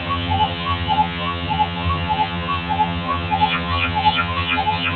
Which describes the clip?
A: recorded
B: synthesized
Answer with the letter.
B